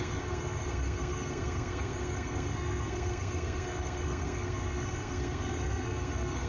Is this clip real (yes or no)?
no